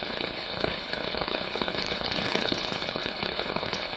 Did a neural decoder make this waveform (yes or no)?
yes